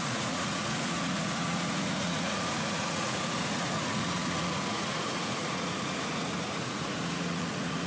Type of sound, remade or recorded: remade